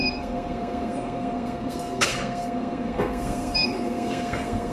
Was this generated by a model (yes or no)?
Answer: yes